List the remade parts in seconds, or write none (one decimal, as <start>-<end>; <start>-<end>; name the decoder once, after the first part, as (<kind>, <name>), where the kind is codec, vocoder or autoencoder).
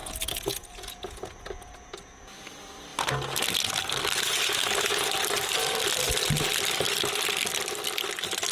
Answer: 0.0-2.3 (vocoder, Vocos)